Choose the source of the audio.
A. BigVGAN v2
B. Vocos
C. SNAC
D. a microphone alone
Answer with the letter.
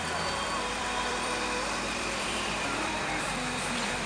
A